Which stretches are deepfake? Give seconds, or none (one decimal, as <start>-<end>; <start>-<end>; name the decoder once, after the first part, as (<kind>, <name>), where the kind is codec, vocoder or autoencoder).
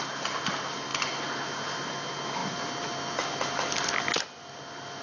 none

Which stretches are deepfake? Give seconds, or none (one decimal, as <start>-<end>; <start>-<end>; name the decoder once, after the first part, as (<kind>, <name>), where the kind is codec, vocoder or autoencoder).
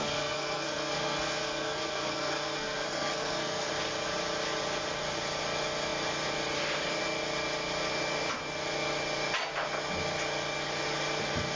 0.0-3.7 (codec, SNAC)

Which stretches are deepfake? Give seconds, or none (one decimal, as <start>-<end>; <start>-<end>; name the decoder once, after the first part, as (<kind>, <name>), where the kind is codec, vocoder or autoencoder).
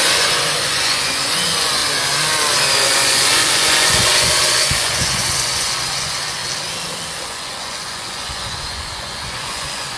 0.0-1.8 (vocoder, Vocos); 2.7-6.4; 7.2-10.0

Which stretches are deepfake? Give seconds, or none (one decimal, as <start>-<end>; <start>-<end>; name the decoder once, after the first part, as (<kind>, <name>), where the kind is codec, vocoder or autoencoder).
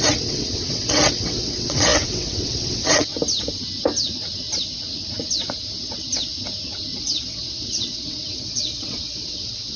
0.0-3.1 (vocoder, WaveNeXt); 7.0-9.8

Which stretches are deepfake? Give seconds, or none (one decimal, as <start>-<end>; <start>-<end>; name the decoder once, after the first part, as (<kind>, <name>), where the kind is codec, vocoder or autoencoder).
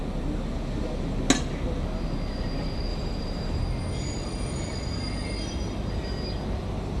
2.9-3.6 (vocoder, BigVGAN v2)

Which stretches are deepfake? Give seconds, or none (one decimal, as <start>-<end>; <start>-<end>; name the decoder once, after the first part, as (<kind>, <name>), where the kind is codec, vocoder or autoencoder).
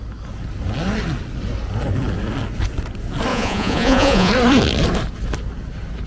3.3-4.3 (vocoder, Vocos)